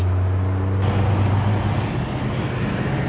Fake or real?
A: real